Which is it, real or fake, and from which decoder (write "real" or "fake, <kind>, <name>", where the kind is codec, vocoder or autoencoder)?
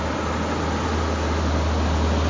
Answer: real